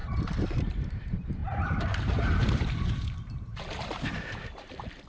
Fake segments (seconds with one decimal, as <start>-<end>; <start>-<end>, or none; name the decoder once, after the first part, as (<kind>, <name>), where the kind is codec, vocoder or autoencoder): 0.6-5.1 (vocoder, BigVGAN v2)